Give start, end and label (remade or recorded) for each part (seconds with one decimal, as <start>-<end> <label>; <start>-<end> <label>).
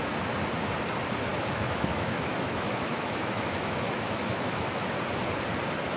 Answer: 0.0-1.3 recorded; 1.3-4.9 remade; 4.9-6.0 recorded